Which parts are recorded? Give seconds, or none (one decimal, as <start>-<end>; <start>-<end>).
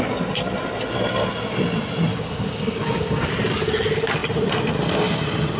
0.0-2.1; 3.3-5.6